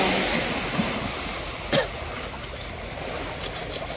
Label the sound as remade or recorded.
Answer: recorded